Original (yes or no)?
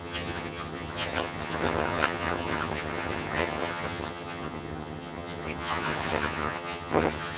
no